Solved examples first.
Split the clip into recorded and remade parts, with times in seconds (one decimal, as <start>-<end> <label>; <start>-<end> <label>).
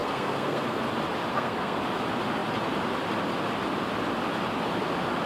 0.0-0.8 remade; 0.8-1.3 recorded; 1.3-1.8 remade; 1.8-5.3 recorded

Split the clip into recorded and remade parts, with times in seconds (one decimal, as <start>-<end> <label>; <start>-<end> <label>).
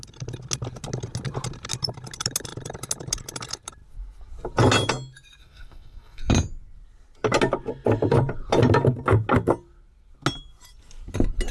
0.0-5.4 recorded; 5.4-6.3 remade; 6.3-11.5 recorded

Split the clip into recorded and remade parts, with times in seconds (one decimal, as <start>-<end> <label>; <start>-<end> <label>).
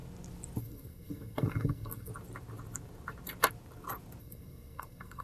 0.0-0.6 recorded; 0.6-2.1 remade; 2.1-4.2 recorded; 4.2-5.2 remade